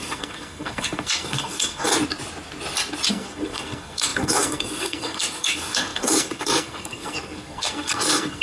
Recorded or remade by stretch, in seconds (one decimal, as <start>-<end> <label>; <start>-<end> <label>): 0.0-1.9 remade; 1.9-3.1 recorded; 3.1-8.4 remade